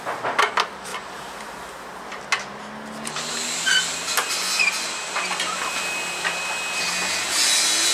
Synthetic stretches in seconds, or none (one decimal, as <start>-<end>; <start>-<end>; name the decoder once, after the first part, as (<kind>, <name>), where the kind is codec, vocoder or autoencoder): none